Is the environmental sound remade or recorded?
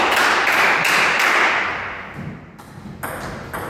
recorded